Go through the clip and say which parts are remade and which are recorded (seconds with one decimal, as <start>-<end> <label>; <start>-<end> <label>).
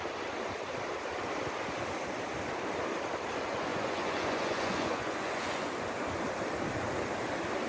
0.0-3.7 recorded; 3.7-5.7 remade; 5.7-7.7 recorded